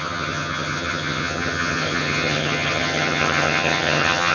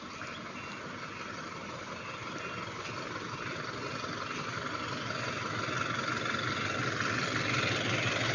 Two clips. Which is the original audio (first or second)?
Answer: second